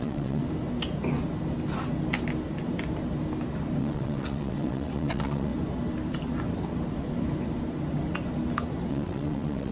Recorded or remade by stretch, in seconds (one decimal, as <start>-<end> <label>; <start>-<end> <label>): 0.0-0.4 remade; 0.4-3.8 recorded; 3.8-5.5 remade; 5.5-8.9 recorded; 8.9-9.7 remade

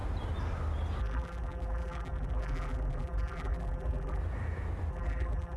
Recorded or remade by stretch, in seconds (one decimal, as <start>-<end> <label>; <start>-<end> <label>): 0.0-1.0 recorded; 1.0-4.2 remade; 4.2-4.9 recorded; 4.9-5.6 remade

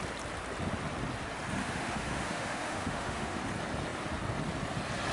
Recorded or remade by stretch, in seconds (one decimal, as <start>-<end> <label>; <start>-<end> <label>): 0.0-1.6 recorded; 1.6-3.4 remade; 3.4-5.1 recorded